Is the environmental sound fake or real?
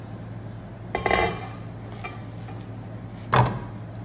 real